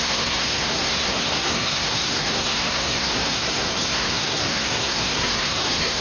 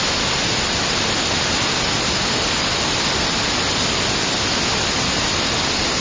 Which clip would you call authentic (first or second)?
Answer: second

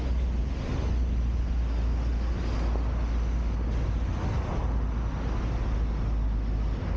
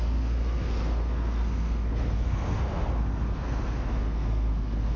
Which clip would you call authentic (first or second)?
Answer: first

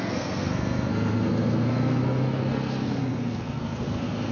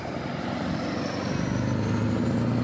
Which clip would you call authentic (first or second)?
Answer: second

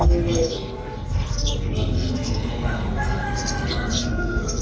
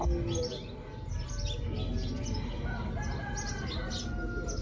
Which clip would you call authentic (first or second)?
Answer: second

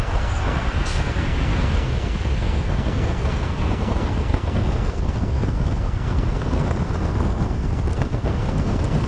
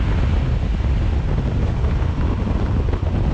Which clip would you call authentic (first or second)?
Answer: second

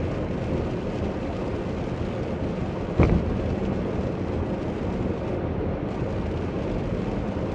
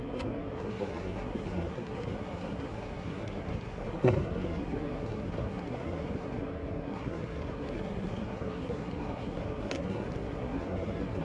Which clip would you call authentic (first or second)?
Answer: first